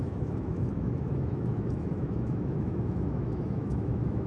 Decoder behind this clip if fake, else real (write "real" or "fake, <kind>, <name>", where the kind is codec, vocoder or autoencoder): fake, autoencoder, DAC-VAE